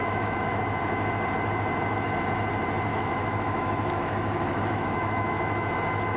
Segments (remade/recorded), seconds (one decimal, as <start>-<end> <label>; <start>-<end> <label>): 0.0-0.6 remade; 0.6-2.9 recorded; 2.9-5.7 remade; 5.7-6.2 recorded